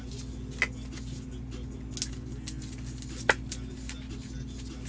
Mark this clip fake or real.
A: real